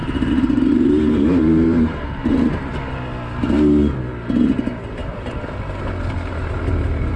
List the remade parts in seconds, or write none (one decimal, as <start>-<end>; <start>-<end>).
0.0-2.7; 5.0-5.8

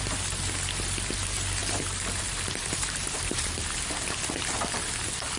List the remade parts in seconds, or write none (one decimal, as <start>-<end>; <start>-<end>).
1.6-3.9

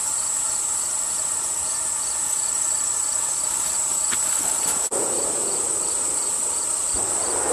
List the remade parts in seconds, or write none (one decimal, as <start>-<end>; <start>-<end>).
2.7-6.9

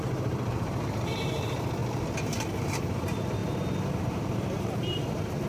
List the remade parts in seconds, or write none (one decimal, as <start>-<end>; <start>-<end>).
0.0-1.8; 2.5-3.4; 3.9-5.5

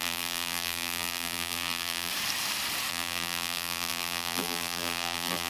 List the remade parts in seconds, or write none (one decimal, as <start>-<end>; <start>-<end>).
0.0-2.1; 2.9-5.5